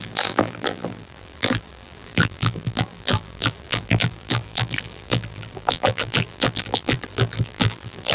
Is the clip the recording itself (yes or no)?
no